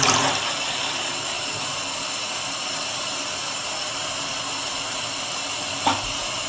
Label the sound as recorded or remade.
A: recorded